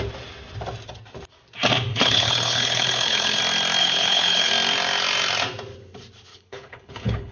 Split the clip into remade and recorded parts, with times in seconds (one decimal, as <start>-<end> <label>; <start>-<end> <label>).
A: 0.0-1.9 recorded; 1.9-3.4 remade; 3.4-3.8 recorded; 3.8-4.5 remade; 4.5-6.3 recorded; 6.3-7.3 remade